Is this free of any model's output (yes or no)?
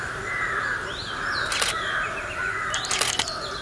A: no